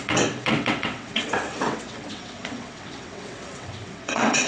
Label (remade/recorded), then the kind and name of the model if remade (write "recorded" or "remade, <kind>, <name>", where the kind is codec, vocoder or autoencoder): remade, vocoder, WaveNeXt